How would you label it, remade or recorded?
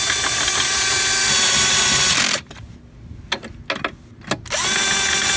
recorded